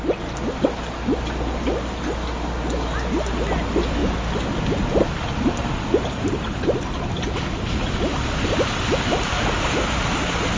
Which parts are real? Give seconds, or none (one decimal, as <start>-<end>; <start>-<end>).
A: 0.0-10.6